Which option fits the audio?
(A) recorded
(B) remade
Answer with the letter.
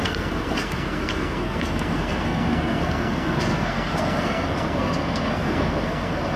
B